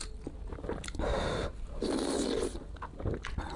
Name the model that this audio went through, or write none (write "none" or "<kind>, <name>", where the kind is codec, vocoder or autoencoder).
none